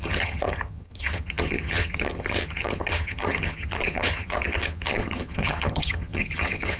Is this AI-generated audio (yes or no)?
yes